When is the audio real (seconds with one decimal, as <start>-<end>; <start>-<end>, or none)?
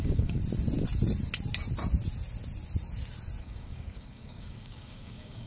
0.4-3.4